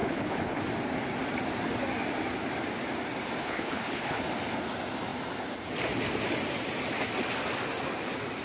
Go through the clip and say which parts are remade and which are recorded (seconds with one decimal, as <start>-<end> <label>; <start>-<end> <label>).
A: 0.0-0.6 remade; 0.6-3.4 recorded; 3.4-4.2 remade; 4.2-8.4 recorded